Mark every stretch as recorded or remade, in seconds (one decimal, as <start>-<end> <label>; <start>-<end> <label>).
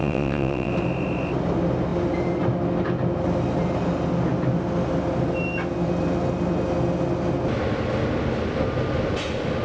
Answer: 0.0-0.7 remade; 0.7-9.6 recorded